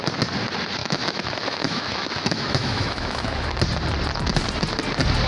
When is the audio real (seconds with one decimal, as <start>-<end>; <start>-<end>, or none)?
0.0-0.8; 3.6-5.3